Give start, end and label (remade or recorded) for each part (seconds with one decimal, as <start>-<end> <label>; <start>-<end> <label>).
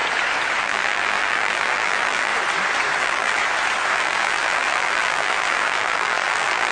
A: 0.0-0.6 recorded; 0.6-2.3 remade; 2.3-3.0 recorded; 3.0-3.4 remade; 3.4-3.9 recorded; 3.9-6.7 remade